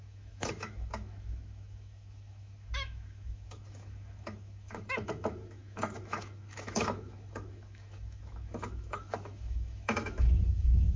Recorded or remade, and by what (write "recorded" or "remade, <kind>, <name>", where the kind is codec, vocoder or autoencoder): remade, autoencoder, DAC-VAE